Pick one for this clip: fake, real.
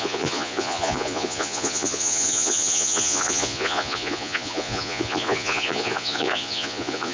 fake